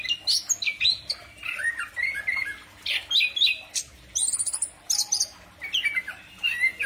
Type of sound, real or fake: real